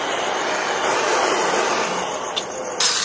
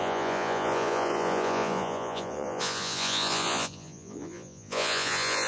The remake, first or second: second